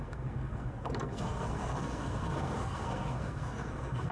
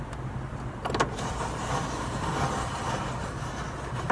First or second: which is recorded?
second